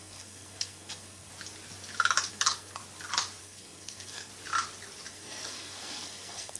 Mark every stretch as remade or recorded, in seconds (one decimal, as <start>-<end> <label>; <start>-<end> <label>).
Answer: 0.0-1.3 remade; 1.3-2.3 recorded; 2.3-2.8 remade; 2.8-3.4 recorded; 3.4-4.3 remade; 4.3-5.1 recorded; 5.1-6.6 remade